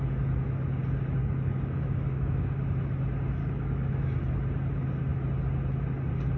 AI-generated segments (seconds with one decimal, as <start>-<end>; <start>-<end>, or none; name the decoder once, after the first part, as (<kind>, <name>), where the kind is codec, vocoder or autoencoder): 1.2-2.6 (codec, DAC); 3.4-4.3